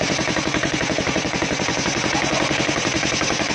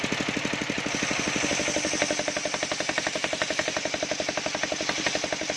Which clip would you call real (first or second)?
second